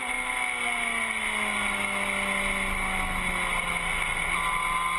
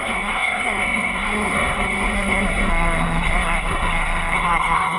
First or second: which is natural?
first